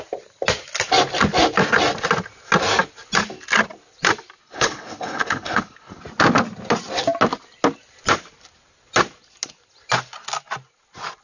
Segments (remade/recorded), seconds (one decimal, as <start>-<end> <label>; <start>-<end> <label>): 0.0-4.4 recorded; 4.4-6.0 remade; 6.0-11.2 recorded

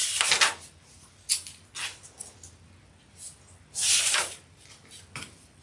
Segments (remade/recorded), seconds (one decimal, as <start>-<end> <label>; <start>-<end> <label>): 0.0-3.8 recorded; 3.8-5.0 remade; 5.0-5.6 recorded

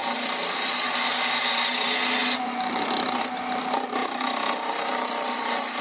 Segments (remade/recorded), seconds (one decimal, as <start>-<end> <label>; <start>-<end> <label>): 0.0-0.9 remade; 0.9-2.2 recorded; 2.2-2.9 remade; 2.9-4.0 recorded; 4.0-5.8 remade